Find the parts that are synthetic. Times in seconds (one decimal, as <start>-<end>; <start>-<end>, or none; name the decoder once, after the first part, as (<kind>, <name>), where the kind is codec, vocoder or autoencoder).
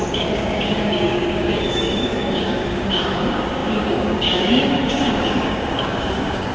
0.0-6.5 (codec, DAC)